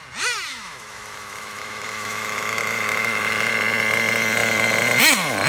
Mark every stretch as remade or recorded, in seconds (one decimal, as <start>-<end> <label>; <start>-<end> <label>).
0.0-0.5 recorded; 0.5-3.5 remade; 3.5-5.5 recorded